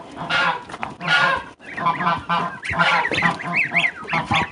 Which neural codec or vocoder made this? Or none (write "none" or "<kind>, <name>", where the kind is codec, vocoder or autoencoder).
none